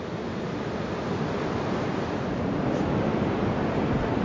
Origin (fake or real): real